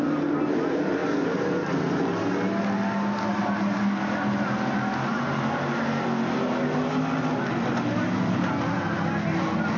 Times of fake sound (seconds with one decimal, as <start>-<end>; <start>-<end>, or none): 1.0-2.0